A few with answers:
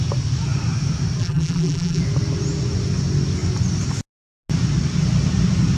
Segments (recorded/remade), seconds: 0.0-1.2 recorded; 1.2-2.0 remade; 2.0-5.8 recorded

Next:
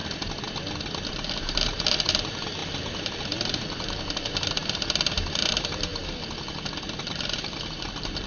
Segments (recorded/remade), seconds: 0.0-1.1 recorded; 1.1-6.0 remade; 6.0-7.0 recorded; 7.0-8.3 remade

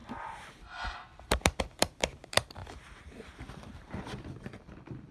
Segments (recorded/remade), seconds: 0.0-0.6 recorded; 0.6-5.1 remade

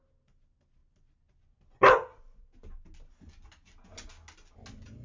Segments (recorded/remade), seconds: 0.0-5.0 recorded